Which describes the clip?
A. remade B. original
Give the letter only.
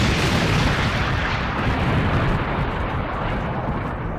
A